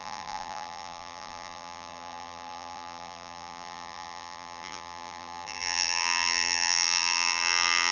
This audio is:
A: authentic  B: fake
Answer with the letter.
B